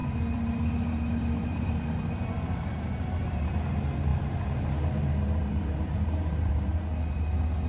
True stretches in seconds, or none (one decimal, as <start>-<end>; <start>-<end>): 1.9-4.1; 6.8-7.7